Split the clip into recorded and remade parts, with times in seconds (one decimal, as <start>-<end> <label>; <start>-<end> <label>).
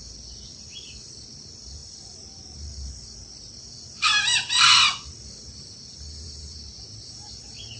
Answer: 0.0-5.5 recorded; 5.5-7.8 remade